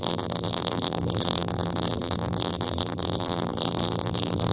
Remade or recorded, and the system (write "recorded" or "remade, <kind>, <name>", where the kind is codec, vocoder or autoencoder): remade, vocoder, BigVGAN v2